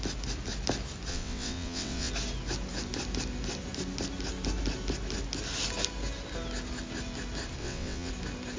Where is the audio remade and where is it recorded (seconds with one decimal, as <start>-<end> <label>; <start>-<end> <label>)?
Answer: 0.0-1.1 recorded; 1.1-2.1 remade; 2.1-7.6 recorded; 7.6-8.1 remade; 8.1-8.6 recorded